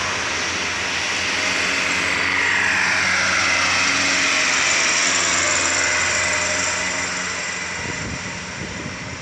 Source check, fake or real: real